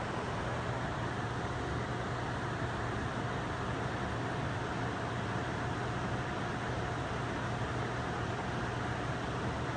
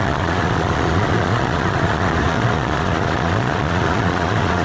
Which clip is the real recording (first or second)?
first